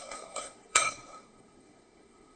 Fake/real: fake